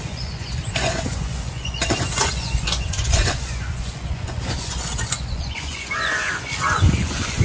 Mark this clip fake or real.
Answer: fake